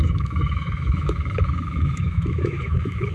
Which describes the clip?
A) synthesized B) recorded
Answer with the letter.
A